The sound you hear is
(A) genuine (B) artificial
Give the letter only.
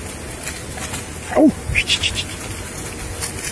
A